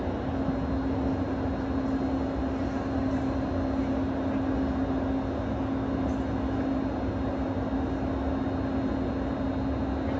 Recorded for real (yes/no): yes